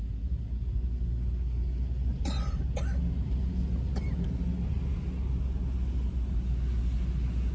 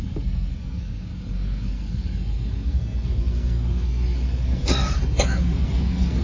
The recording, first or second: first